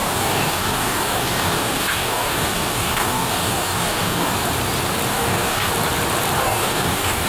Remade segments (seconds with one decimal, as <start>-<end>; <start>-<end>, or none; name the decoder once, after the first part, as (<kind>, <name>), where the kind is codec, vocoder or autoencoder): 0.0-4.3 (codec, DAC); 5.1-5.7; 6.4-7.3